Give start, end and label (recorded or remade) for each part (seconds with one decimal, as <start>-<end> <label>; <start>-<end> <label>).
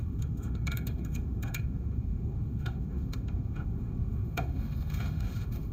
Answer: 0.0-5.7 remade